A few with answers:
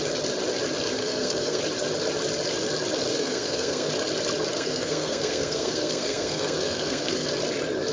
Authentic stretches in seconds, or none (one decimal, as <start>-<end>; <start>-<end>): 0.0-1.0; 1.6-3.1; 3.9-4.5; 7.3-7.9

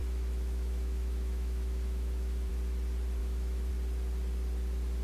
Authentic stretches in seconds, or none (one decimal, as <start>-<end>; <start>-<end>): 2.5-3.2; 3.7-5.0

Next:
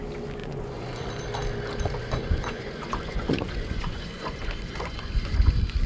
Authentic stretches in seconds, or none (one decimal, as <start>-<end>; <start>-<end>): 0.0-0.4; 1.1-2.0; 5.5-5.9

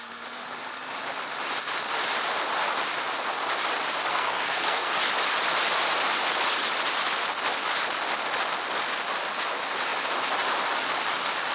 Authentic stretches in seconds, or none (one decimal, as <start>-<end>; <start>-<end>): 0.0-4.1; 5.0-11.5

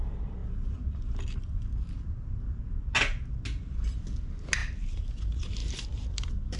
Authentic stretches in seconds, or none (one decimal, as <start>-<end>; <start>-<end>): 0.0-4.6; 5.1-5.6

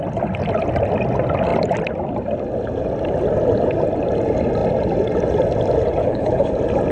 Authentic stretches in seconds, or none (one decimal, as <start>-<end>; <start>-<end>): 0.0-6.0; 6.5-6.9